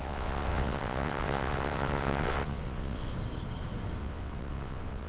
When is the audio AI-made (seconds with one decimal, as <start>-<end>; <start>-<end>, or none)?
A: 0.0-3.1; 4.0-5.1